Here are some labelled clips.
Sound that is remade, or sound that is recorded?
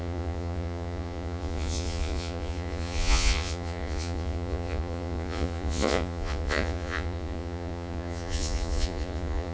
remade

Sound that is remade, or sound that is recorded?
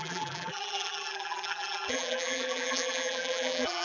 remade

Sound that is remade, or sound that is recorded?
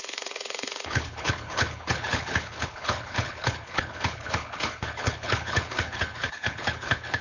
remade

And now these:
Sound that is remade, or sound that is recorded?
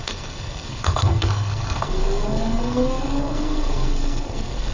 remade